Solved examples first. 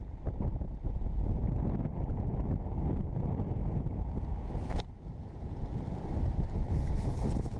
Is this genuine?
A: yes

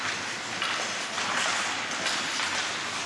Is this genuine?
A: yes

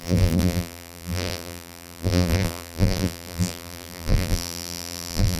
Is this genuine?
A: no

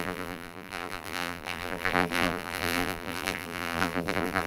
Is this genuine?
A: no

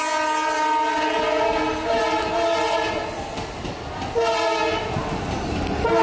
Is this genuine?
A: yes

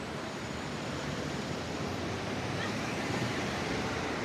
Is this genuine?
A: no